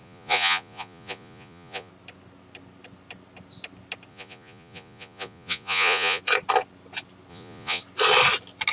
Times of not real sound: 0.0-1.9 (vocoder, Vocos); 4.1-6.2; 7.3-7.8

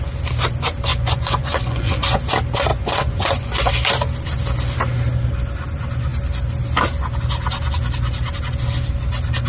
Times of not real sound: 0.9-2.3 (vocoder, Vocos); 2.7-3.7

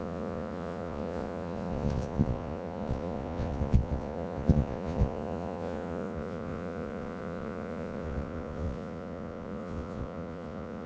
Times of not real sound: 0.0-10.9 (vocoder, Vocos)